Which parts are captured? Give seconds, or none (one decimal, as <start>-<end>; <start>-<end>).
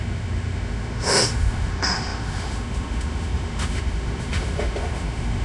none